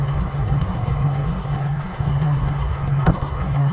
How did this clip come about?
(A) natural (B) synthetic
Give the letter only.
B